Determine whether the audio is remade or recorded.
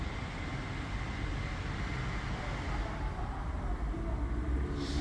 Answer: recorded